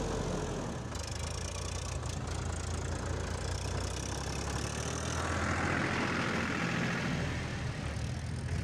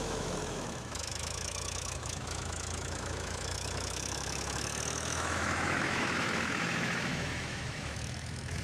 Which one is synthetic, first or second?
second